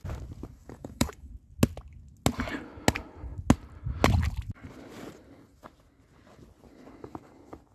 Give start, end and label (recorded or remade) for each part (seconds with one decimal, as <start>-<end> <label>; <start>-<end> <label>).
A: 0.0-0.6 recorded; 0.6-1.3 remade; 1.3-7.7 recorded

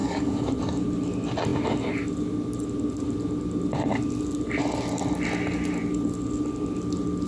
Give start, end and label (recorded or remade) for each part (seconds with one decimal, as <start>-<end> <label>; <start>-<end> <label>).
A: 0.0-0.5 remade; 0.5-7.3 recorded

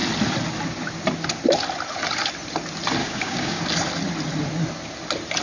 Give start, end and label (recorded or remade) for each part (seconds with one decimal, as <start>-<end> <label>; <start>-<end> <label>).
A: 0.0-3.0 recorded; 3.0-3.6 remade; 3.6-5.4 recorded

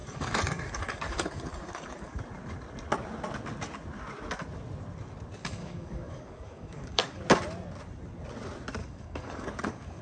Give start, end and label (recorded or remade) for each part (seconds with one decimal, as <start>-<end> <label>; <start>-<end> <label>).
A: 0.0-2.2 remade; 2.2-5.4 recorded; 5.4-7.2 remade; 7.2-8.8 recorded; 8.8-10.0 remade

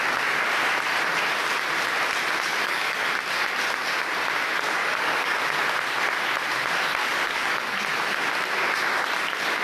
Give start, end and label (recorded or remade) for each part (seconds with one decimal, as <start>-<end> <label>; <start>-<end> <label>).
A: 0.0-2.5 recorded; 2.5-3.1 remade; 3.1-4.8 recorded; 4.8-5.4 remade; 5.4-7.0 recorded; 7.0-7.8 remade; 7.8-9.6 recorded

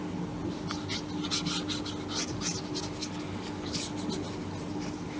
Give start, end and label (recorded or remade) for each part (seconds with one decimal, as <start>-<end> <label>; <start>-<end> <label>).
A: 0.0-3.0 recorded; 3.0-3.8 remade; 3.8-5.2 recorded